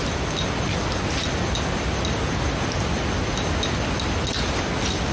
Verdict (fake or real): real